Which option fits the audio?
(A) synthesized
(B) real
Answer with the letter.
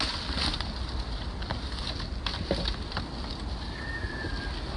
B